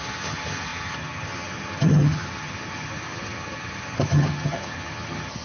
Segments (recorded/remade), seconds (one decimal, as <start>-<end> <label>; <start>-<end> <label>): 0.0-5.4 remade